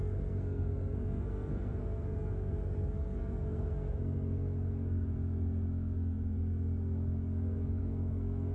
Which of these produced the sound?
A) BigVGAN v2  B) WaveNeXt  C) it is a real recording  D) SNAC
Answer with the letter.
D